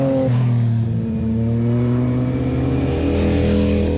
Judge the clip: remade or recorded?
recorded